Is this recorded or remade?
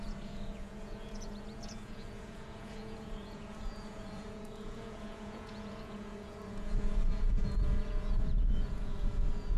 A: remade